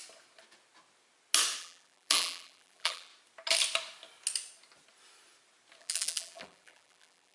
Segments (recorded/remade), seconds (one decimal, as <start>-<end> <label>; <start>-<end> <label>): 0.0-1.6 recorded; 1.6-3.1 remade; 3.1-5.8 recorded; 5.8-7.3 remade